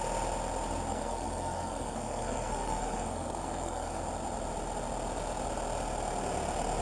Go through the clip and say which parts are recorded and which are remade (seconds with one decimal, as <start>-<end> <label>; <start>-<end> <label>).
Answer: 0.0-0.9 recorded; 0.9-4.0 remade; 4.0-6.8 recorded